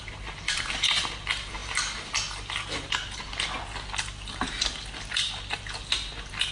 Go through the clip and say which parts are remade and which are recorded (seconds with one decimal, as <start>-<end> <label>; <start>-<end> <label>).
0.0-6.5 recorded